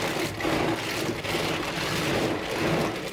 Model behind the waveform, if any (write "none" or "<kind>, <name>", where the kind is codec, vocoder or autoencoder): none